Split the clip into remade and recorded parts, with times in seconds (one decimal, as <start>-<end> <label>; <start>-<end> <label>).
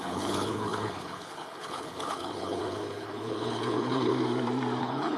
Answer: 0.0-4.1 remade; 4.1-4.8 recorded; 4.8-5.2 remade